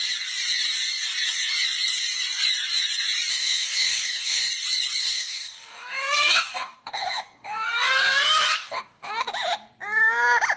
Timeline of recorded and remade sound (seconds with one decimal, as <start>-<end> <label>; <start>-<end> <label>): 0.0-3.3 recorded; 3.3-4.5 remade; 4.5-5.0 recorded; 5.0-9.1 remade; 9.1-10.6 recorded